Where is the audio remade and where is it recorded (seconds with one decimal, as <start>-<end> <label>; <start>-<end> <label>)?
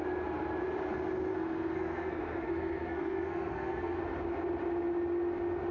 0.0-1.3 recorded; 1.3-4.0 remade; 4.0-5.7 recorded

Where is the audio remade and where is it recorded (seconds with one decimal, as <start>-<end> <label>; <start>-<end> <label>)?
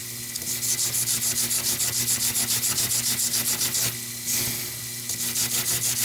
0.0-6.0 recorded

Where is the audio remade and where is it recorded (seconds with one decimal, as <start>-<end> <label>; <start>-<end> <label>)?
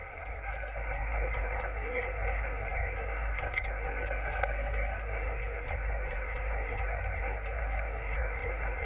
0.0-8.9 remade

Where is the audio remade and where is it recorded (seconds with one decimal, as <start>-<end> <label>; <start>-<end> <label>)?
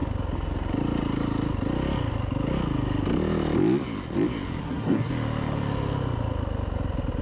0.0-4.6 recorded; 4.6-5.1 remade; 5.1-7.2 recorded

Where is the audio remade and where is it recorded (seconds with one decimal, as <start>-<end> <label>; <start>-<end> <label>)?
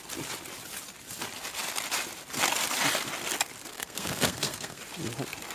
0.0-3.7 recorded; 3.7-4.8 remade; 4.8-5.5 recorded